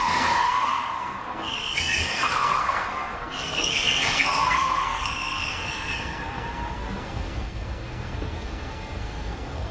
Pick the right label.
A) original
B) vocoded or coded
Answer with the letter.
B